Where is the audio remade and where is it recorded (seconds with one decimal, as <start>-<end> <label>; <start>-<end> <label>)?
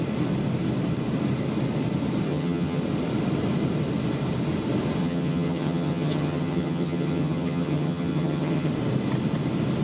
0.0-2.3 recorded; 2.3-2.8 remade; 2.8-5.0 recorded; 5.0-8.7 remade; 8.7-9.8 recorded